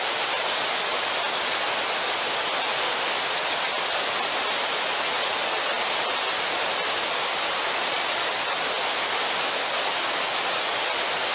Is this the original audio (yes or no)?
yes